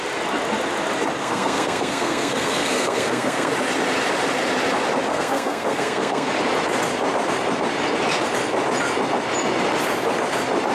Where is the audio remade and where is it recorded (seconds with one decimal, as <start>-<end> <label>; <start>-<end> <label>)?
0.0-1.2 recorded; 1.2-3.5 remade; 3.5-5.1 recorded; 5.1-6.3 remade; 6.3-10.7 recorded